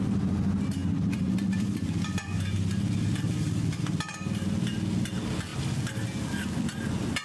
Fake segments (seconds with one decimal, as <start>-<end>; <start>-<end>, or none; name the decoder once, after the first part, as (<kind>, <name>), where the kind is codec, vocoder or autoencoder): 0.8-3.8 (vocoder, BigVGAN v2)